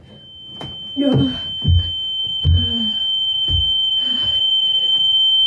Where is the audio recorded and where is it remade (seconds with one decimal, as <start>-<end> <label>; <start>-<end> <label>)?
0.0-2.2 recorded; 2.2-5.5 remade